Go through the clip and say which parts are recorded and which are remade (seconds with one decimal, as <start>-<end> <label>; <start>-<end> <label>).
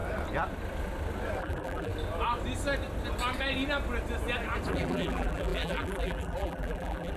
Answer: 0.0-1.4 recorded; 1.4-1.9 remade; 1.9-4.7 recorded; 4.7-7.2 remade